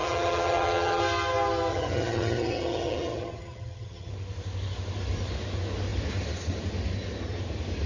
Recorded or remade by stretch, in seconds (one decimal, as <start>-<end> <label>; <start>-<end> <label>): 0.0-1.0 remade; 1.0-1.7 recorded; 1.7-4.1 remade; 4.1-7.9 recorded